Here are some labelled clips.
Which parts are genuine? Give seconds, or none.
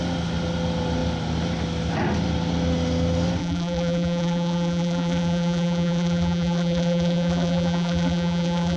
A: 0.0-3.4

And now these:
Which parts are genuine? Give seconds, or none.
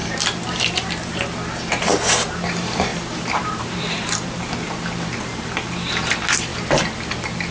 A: 0.0-2.3; 6.5-7.5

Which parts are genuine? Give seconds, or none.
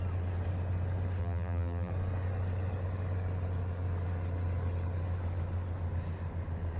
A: 0.0-1.2; 1.9-6.8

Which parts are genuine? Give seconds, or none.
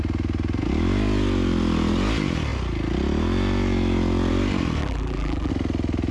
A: 0.0-4.8; 5.5-6.1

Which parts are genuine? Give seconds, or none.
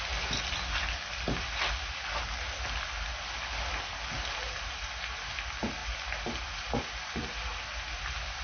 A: 0.0-8.4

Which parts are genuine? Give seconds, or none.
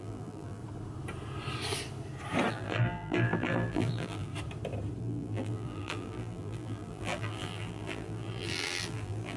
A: 0.6-2.5; 4.3-5.0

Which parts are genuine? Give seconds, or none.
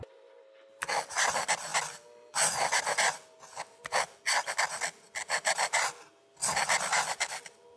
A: 0.0-7.8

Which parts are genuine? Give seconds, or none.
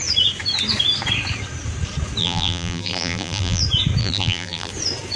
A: 0.0-2.2; 3.6-4.0; 4.7-5.2